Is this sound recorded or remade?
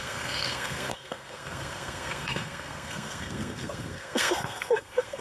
remade